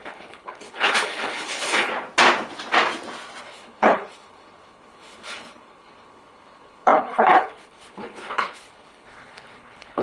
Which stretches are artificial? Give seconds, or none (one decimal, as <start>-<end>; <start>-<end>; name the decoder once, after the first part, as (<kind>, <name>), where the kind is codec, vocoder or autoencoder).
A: 0.0-1.9 (codec, HILCodec); 3.4-10.0